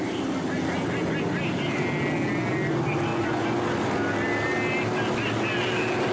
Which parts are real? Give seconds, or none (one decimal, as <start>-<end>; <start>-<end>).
0.0-3.1; 3.6-6.1